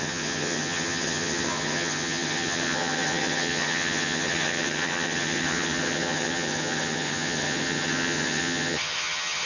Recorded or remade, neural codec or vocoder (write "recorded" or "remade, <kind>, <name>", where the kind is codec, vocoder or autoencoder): remade, vocoder, HiFi-GAN